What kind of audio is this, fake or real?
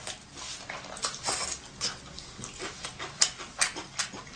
real